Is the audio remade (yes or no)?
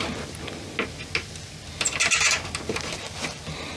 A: no